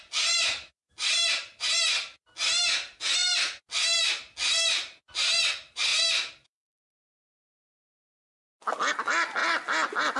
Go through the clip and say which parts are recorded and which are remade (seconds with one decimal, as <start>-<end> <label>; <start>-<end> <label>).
0.0-10.2 recorded